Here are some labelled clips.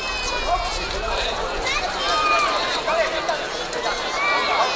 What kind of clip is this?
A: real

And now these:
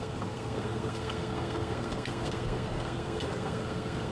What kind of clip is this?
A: fake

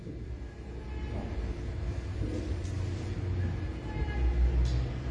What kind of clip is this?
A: real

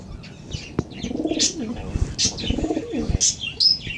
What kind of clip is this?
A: real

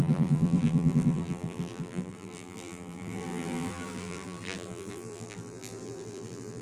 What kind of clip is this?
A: fake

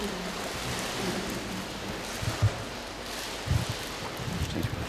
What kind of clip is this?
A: fake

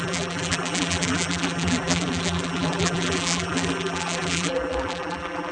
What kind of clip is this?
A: fake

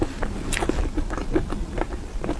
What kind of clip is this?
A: real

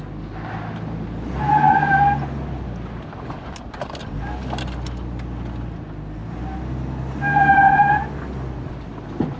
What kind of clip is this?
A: real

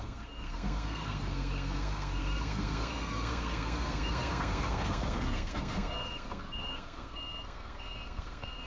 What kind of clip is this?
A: fake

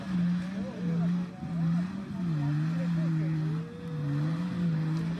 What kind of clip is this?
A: real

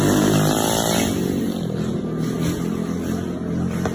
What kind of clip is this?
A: real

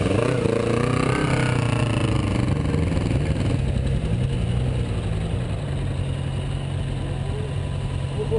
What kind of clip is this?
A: real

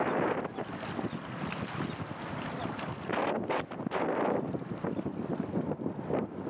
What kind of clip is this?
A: real